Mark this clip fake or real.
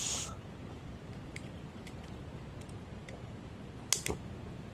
fake